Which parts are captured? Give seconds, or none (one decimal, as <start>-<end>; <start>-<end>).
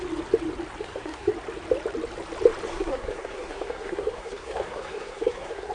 0.0-0.8; 1.3-2.7